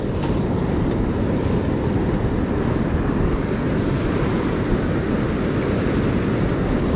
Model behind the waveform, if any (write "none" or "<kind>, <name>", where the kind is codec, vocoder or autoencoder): none